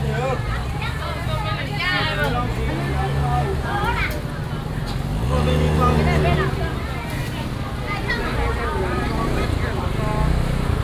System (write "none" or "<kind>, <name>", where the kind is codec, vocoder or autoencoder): none